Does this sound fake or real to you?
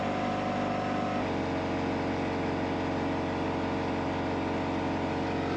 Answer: real